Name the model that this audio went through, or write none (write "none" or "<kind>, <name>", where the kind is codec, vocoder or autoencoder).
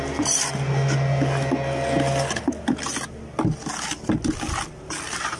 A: none